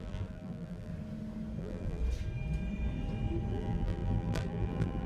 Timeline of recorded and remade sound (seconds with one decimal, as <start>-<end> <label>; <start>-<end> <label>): 0.0-0.9 remade; 0.9-1.6 recorded; 1.6-2.0 remade; 2.0-3.5 recorded; 3.5-5.1 remade